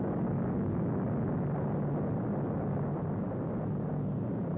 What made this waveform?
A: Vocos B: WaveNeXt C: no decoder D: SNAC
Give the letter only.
C